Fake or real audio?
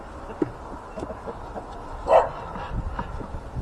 real